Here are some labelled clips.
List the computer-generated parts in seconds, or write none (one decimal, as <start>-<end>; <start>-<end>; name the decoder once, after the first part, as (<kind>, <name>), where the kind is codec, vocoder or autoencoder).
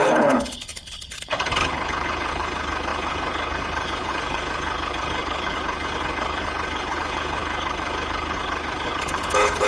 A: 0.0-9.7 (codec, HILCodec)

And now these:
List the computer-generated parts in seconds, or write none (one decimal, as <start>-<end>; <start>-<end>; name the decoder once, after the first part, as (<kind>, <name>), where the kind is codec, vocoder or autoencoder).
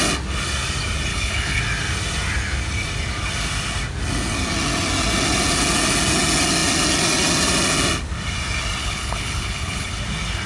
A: 1.1-1.6 (codec, HILCodec); 8.8-10.0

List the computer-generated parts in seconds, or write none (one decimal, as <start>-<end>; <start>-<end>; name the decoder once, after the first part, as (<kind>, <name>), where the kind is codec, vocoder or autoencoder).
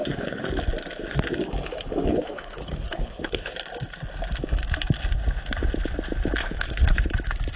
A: 0.0-0.5 (codec, HILCodec); 2.1-3.5; 6.4-7.1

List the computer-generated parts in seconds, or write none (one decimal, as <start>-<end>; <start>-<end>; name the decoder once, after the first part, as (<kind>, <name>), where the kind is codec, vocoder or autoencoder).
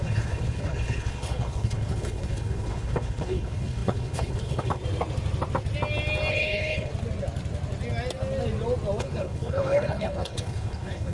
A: 0.0-4.8 (codec, HILCodec); 6.3-6.9; 9.0-11.1